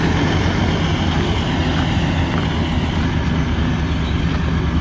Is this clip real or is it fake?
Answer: real